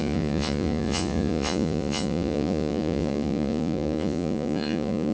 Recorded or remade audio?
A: remade